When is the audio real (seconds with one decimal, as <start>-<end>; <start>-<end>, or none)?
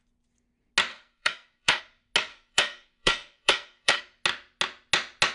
0.0-0.9; 1.8-2.3; 4.0-5.3